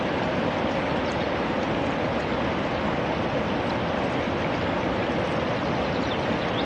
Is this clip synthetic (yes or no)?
no